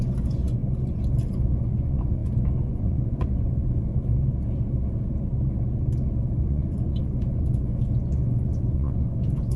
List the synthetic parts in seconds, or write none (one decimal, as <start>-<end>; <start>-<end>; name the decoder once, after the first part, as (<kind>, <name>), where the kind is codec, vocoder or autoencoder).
0.0-0.6 (vocoder, Vocos); 1.3-3.9; 6.4-9.6